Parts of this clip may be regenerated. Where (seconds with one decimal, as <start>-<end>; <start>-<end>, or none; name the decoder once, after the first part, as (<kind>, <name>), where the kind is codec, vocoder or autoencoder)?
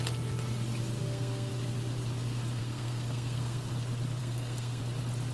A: 1.0-1.5 (codec, SNAC); 2.6-3.7; 4.2-4.8